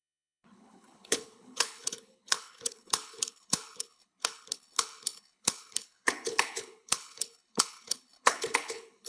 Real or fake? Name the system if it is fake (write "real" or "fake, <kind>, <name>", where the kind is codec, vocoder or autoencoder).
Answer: fake, codec, HILCodec